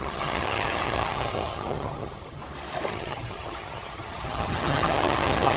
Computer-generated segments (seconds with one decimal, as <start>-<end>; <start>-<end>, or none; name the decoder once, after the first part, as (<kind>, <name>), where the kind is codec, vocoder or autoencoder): 0.0-2.4 (vocoder, HiFi-GAN); 2.9-5.6